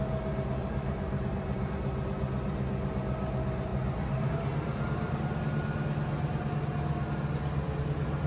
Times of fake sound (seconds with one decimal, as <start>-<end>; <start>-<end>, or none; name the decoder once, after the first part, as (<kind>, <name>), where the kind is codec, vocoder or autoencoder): 0.6-1.7 (vocoder, BigVGAN v2); 3.7-4.3